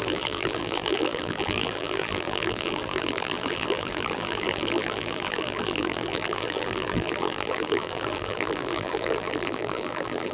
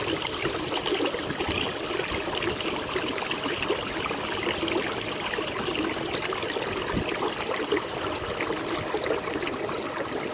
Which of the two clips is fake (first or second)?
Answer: first